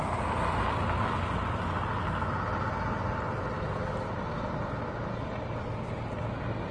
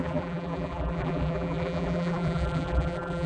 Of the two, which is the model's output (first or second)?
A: second